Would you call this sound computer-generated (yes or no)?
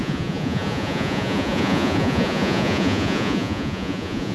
yes